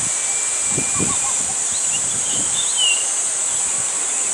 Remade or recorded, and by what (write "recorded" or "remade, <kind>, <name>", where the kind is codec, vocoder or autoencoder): remade, vocoder, BigVGAN v2